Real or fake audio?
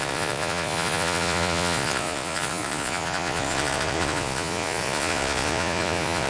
fake